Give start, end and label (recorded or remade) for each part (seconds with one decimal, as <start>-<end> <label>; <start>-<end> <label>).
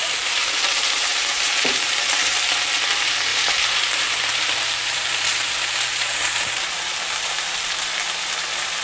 0.0-2.5 remade; 2.5-3.3 recorded; 3.3-7.7 remade; 7.7-8.8 recorded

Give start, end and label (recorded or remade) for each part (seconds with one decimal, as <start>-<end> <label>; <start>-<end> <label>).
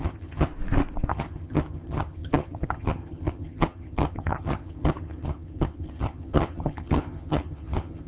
0.0-0.5 remade; 0.5-1.1 recorded; 1.1-8.1 remade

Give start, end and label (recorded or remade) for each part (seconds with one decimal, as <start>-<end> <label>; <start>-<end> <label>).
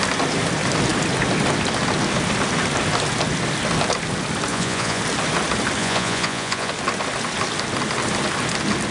0.0-4.5 recorded; 4.5-5.0 remade; 5.0-5.8 recorded; 5.8-6.7 remade; 6.7-8.9 recorded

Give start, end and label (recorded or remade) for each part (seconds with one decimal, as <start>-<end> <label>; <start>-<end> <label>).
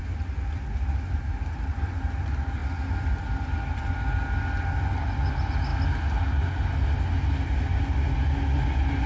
0.0-9.1 recorded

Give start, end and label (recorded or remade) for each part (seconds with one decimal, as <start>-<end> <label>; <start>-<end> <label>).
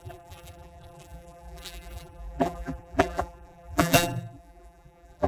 0.0-5.3 remade